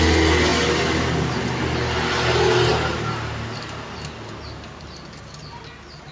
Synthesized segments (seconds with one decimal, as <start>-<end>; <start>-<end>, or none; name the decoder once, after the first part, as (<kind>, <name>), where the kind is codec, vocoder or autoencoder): none

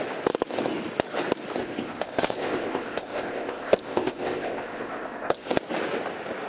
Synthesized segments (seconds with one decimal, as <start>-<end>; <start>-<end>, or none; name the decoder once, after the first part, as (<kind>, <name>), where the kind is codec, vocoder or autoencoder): 1.6-5.5 (codec, ZipCodec)

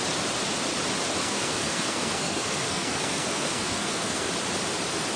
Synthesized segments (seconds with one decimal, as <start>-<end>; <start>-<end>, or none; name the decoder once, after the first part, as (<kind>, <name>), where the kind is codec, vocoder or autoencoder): 1.2-4.3 (codec, SNAC)

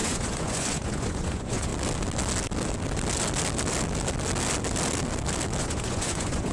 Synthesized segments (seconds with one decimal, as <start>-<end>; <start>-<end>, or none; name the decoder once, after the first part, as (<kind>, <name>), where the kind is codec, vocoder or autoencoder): 0.0-1.7 (vocoder, Vocos); 5.6-6.5

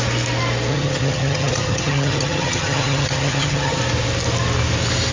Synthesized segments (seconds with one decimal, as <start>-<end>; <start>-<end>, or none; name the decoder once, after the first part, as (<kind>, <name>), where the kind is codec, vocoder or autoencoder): 0.7-3.8 (vocoder, HiFi-GAN)